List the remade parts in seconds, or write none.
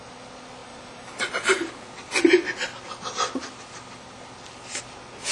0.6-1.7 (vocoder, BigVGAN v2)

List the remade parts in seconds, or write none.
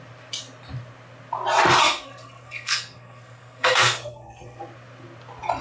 1.8-4.6 (codec, SNAC)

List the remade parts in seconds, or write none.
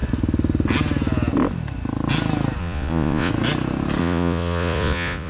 2.6-3.3 (vocoder, Vocos); 4.0-5.3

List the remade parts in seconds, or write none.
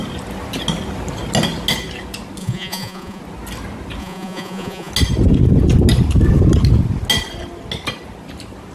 2.4-3.2 (vocoder, Vocos); 4.0-4.9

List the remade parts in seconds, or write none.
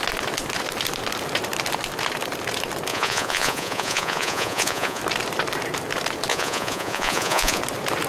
2.9-5.0 (vocoder, Vocos); 6.3-7.6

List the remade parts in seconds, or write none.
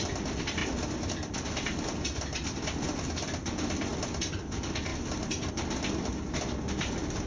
none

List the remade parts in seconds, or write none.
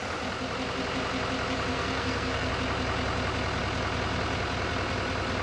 1.7-2.5 (codec, SNAC)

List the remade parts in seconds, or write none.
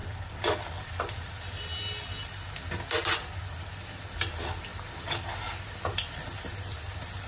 none